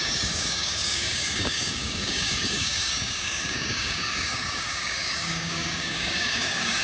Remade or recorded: remade